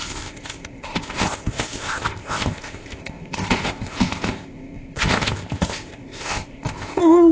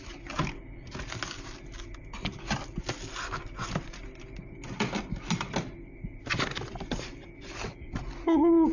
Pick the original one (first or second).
second